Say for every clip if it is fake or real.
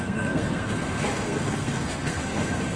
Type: fake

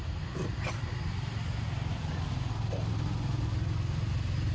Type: real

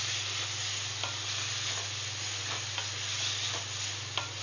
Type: real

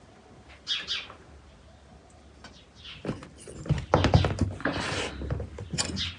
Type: real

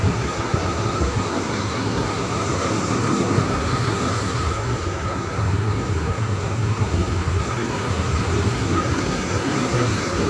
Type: fake